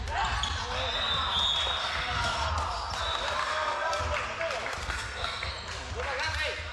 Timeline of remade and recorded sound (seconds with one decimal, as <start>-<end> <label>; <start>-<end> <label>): 0.0-1.8 recorded; 1.8-2.5 remade; 2.5-3.4 recorded; 3.4-4.0 remade; 4.0-4.8 recorded; 4.8-5.5 remade; 5.5-6.7 recorded